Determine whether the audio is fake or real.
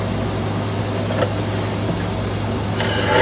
real